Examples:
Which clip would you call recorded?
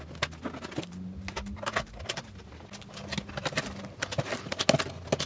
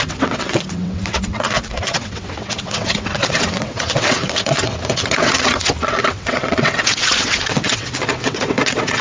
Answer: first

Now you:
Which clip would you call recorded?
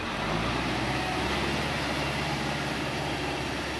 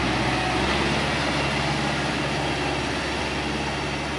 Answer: second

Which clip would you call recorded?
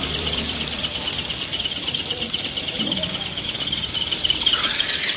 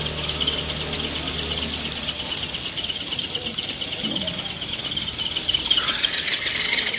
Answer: second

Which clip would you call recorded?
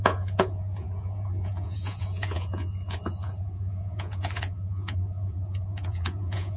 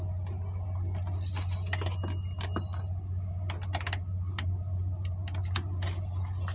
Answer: second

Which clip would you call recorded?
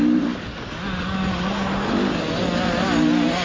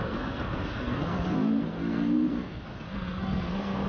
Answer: first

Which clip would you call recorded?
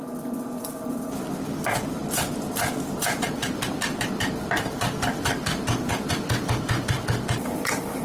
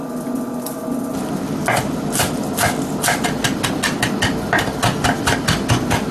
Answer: second